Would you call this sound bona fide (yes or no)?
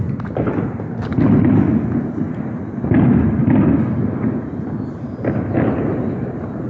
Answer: yes